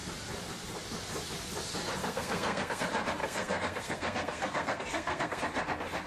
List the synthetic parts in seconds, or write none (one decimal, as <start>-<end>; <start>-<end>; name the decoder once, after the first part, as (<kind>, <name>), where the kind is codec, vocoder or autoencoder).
2.0-2.8 (codec, SNAC); 3.2-5.4